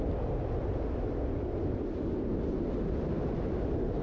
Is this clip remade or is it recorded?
recorded